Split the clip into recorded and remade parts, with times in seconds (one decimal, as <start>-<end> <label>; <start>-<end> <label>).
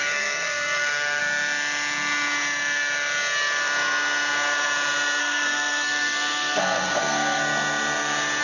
0.0-1.2 remade; 1.2-5.2 recorded; 5.2-7.4 remade; 7.4-8.4 recorded